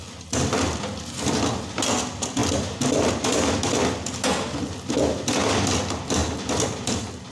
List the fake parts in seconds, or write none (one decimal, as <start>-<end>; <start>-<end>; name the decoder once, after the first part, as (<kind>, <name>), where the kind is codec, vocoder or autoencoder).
none